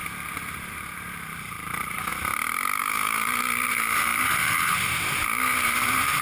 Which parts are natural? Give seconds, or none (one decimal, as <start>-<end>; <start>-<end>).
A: 0.0-0.7; 2.1-2.8